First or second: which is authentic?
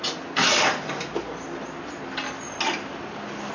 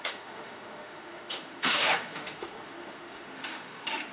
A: first